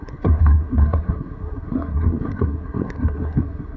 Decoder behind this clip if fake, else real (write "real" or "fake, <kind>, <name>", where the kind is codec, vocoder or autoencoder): fake, codec, SNAC